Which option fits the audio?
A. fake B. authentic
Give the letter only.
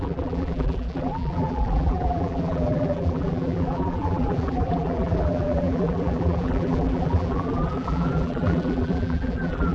A